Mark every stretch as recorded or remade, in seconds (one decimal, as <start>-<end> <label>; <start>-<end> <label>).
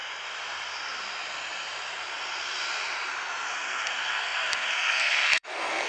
0.0-3.5 recorded; 3.5-5.9 remade